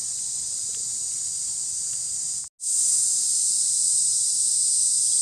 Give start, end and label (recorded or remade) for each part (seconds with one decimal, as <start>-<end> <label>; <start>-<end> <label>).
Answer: 0.0-5.2 recorded